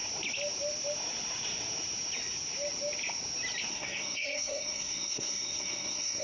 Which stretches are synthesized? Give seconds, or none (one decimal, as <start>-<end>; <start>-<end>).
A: 3.7-6.2